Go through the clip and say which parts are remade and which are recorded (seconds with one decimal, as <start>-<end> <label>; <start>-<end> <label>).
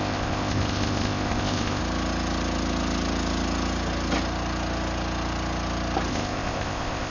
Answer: 0.0-1.8 remade; 1.8-6.1 recorded; 6.1-7.1 remade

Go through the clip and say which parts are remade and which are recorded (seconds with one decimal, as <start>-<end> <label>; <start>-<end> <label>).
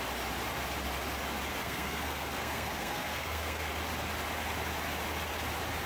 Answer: 0.0-1.6 recorded; 1.6-3.7 remade; 3.7-5.9 recorded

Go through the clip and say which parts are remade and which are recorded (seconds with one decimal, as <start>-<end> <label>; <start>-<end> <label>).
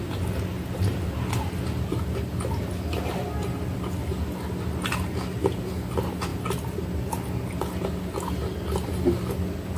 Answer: 0.0-9.8 recorded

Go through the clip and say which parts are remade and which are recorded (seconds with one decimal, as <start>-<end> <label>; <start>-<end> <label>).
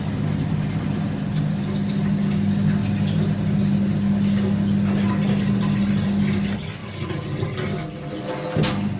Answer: 0.0-9.0 recorded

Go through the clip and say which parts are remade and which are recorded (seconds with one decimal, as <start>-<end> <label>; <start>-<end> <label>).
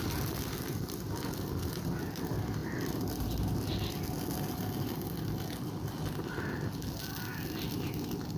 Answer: 0.0-8.4 recorded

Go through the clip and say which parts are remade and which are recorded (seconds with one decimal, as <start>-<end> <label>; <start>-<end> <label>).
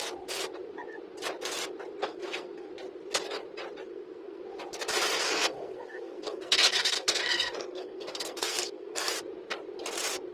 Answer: 0.0-2.0 recorded; 2.0-2.7 remade; 2.7-3.9 recorded; 3.9-4.4 remade; 4.4-5.2 recorded; 5.2-9.1 remade; 9.1-10.3 recorded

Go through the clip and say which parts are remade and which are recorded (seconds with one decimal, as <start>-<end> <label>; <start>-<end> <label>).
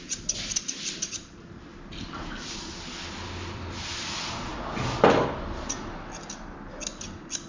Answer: 0.0-7.5 recorded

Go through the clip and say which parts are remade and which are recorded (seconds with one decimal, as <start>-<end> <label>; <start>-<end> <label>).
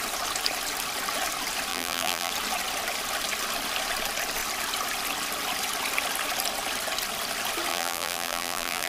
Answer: 0.0-1.7 recorded; 1.7-2.3 remade; 2.3-7.7 recorded; 7.7-8.9 remade